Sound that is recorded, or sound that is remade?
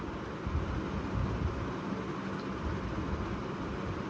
recorded